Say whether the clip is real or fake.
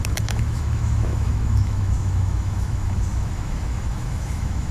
fake